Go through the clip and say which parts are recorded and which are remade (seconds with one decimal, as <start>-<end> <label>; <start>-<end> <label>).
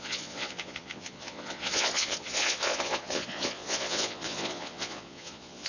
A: 0.0-5.7 remade